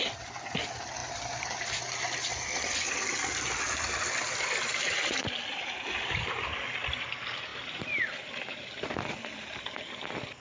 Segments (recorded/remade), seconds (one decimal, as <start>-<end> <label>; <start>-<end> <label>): 0.0-1.0 recorded; 1.0-3.6 remade; 3.6-10.4 recorded